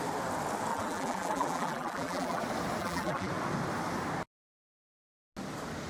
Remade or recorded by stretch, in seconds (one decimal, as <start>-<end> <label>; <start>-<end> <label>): 0.0-0.7 recorded; 0.7-2.4 remade; 2.4-2.8 recorded; 2.8-3.3 remade; 3.3-5.9 recorded